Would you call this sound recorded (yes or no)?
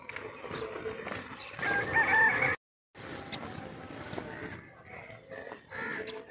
yes